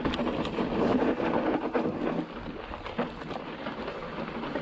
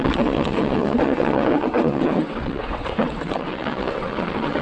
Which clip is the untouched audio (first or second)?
first